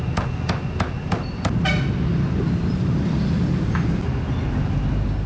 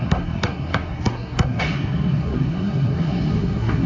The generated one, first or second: second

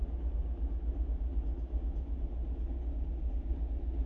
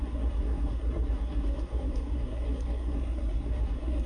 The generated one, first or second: second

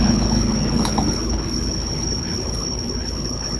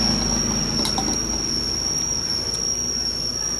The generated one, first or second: first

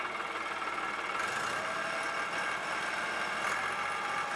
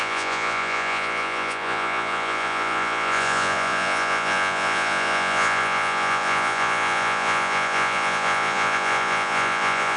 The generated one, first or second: second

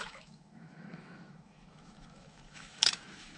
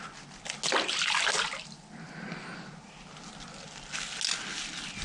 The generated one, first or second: first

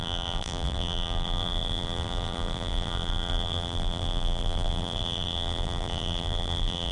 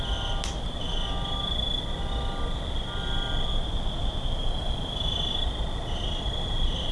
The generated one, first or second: first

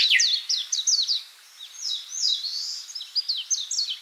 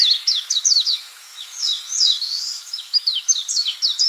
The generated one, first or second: second